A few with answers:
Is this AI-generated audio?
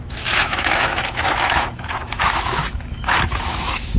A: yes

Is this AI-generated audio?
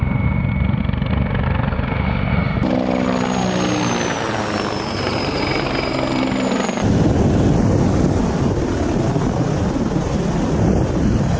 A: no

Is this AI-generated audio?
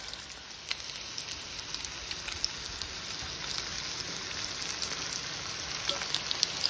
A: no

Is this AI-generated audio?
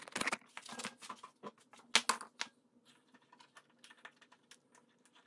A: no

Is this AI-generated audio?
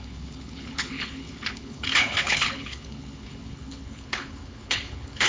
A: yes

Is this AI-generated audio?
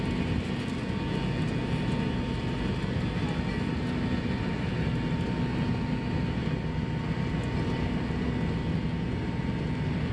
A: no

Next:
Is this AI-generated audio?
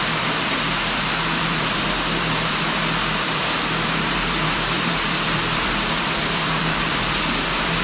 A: yes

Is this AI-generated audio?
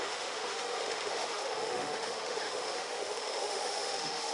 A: yes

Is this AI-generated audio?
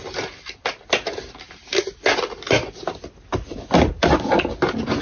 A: no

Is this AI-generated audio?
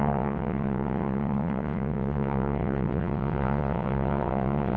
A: yes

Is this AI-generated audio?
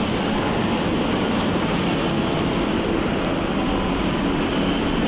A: no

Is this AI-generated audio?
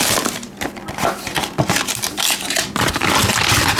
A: yes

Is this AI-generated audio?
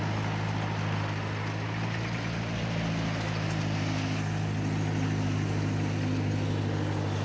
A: no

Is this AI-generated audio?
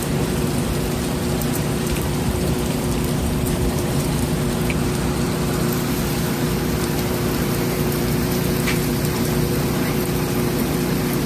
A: yes